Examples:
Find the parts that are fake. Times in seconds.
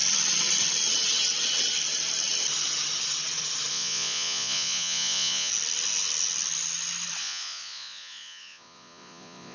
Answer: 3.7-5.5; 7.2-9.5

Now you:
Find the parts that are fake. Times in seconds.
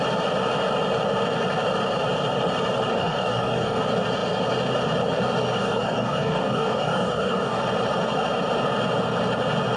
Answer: 2.9-3.8; 5.6-7.6